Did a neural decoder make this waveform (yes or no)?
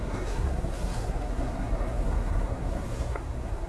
yes